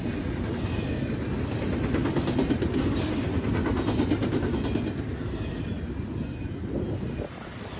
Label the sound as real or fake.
real